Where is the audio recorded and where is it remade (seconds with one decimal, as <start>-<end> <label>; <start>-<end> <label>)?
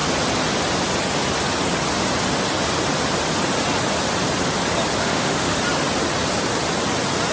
0.0-5.0 recorded; 5.0-5.6 remade; 5.6-7.3 recorded